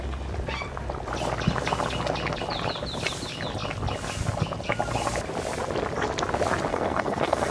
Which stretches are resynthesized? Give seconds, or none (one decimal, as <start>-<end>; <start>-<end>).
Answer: 6.7-7.5